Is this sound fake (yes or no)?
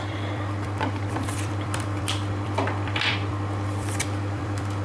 yes